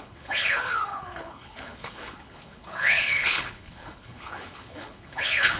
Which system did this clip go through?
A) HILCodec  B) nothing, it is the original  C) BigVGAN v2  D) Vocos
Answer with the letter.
A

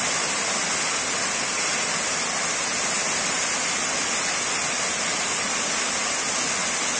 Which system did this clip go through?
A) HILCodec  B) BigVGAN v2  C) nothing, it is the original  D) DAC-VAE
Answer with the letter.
C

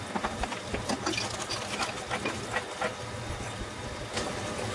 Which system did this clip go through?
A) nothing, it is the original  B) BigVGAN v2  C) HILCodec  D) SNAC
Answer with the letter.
A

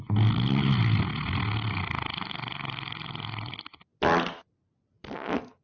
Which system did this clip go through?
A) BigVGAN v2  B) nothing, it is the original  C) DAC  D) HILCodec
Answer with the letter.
B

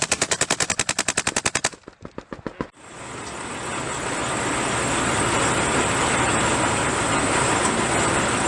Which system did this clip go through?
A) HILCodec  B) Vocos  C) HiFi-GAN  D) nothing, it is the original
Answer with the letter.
D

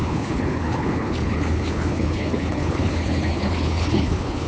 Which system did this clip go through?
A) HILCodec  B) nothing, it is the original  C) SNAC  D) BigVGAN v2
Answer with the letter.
A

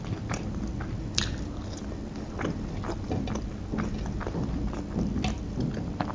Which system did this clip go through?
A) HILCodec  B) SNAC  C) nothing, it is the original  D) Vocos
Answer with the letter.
C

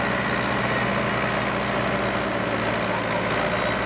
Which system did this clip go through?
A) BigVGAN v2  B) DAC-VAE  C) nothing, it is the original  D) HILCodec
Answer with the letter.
C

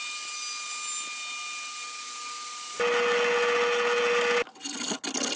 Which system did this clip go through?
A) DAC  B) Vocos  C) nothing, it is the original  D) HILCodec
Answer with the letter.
C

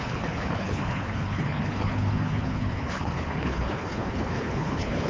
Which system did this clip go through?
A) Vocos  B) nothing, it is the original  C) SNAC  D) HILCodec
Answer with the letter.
D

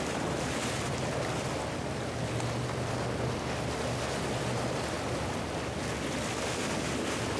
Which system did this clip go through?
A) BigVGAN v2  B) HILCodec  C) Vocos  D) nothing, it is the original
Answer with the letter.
D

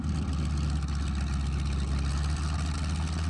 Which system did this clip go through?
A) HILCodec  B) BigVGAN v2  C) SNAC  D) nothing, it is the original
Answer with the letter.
D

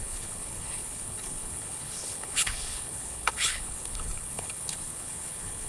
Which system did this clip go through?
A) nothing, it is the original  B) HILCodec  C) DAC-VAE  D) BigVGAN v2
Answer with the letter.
B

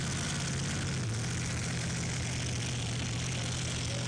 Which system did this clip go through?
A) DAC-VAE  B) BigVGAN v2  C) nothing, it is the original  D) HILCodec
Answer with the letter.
C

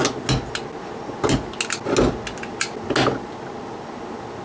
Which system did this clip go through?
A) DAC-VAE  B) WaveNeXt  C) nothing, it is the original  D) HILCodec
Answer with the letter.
C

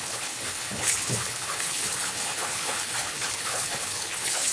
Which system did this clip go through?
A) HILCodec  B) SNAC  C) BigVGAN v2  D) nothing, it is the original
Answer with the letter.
A